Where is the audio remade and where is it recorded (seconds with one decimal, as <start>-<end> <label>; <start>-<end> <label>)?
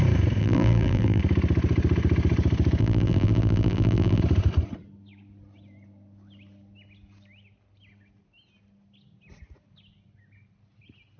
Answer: 0.0-0.4 recorded; 0.4-1.2 remade; 1.2-2.8 recorded; 2.8-4.2 remade; 4.2-11.2 recorded